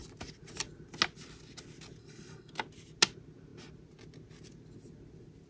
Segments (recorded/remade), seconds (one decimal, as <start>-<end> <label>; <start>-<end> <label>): 0.0-2.0 recorded; 2.0-2.5 remade; 2.5-5.5 recorded